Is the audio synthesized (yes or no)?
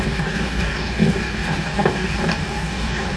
yes